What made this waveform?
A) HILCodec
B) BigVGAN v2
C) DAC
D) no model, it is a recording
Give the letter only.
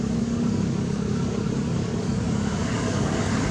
C